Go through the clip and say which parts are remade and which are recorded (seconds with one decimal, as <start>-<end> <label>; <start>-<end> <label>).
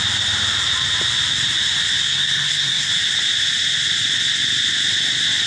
0.0-2.0 recorded; 2.0-2.9 remade; 2.9-5.5 recorded